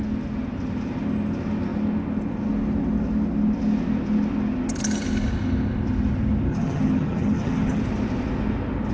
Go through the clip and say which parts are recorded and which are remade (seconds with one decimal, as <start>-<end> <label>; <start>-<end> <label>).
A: 0.0-6.5 recorded; 6.5-7.8 remade; 7.8-8.9 recorded